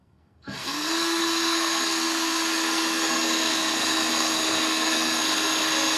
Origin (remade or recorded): remade